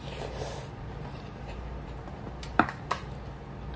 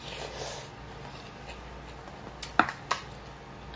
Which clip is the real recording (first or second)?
second